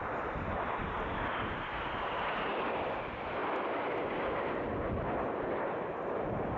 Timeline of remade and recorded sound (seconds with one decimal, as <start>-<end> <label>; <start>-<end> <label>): 0.0-6.6 recorded